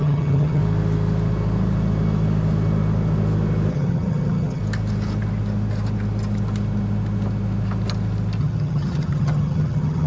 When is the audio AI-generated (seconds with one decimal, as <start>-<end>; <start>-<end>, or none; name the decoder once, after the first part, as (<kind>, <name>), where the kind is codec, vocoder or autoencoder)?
0.0-0.6 (vocoder, HiFi-GAN); 3.7-4.6; 8.4-10.1

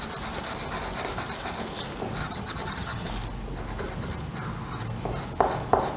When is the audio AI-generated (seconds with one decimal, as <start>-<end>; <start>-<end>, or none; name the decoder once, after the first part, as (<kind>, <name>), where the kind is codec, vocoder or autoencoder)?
2.2-3.1 (vocoder, HiFi-GAN)

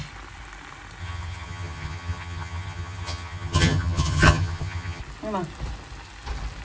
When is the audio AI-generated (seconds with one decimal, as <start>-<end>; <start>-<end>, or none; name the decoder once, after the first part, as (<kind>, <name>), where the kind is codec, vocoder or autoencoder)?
1.0-5.0 (vocoder, HiFi-GAN)

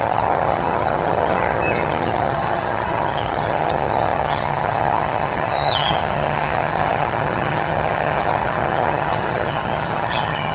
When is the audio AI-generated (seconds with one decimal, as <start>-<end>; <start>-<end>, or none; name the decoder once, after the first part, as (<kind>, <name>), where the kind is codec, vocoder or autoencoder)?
0.0-10.5 (vocoder, HiFi-GAN)

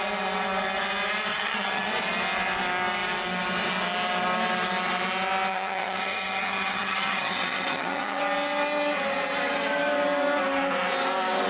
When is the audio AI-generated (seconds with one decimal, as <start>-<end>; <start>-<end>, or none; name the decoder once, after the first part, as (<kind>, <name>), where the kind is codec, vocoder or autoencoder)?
1.3-1.9 (vocoder, HiFi-GAN); 5.5-8.2

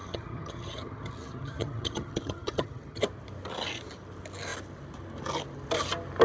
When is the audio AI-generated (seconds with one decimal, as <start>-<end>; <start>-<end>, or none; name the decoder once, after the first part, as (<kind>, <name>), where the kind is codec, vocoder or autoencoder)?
0.0-3.0 (vocoder, HiFi-GAN)

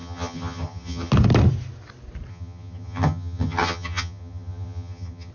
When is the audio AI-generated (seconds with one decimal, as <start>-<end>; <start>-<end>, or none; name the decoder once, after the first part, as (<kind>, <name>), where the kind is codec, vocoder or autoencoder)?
0.0-1.1 (vocoder, HiFi-GAN); 2.3-5.3

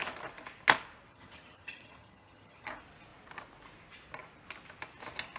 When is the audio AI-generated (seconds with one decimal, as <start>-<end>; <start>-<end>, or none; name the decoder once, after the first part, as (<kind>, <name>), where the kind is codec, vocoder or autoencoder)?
1.1-2.7 (vocoder, HiFi-GAN)